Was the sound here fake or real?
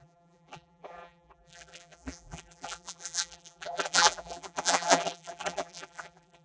fake